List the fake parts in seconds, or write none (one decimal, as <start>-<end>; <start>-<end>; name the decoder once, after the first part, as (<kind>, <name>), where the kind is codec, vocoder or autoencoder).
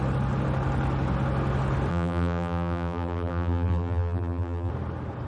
1.9-4.7 (vocoder, BigVGAN v2)